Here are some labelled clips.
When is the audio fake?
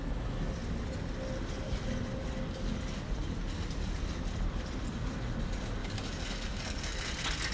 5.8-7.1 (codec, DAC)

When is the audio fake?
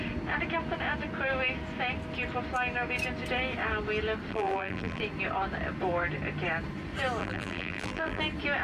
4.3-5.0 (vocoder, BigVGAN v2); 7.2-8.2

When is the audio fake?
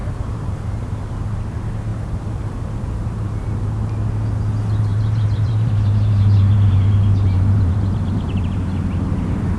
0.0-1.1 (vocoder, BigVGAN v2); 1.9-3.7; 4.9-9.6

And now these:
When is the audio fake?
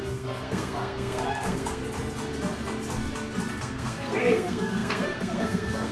0.0-1.8 (codec, SNAC); 3.6-5.9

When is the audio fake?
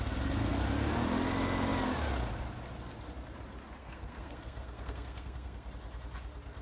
3.8-5.7 (codec, SNAC)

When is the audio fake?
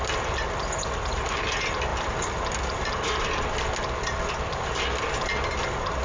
none